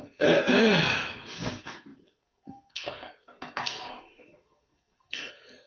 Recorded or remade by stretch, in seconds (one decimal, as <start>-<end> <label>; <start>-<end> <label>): 0.0-5.7 remade